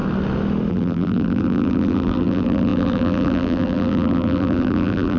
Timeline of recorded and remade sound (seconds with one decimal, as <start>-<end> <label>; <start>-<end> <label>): 0.0-0.7 recorded; 0.7-5.2 remade